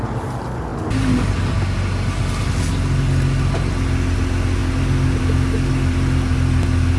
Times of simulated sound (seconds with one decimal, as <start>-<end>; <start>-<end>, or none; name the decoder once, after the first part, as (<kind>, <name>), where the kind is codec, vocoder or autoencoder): none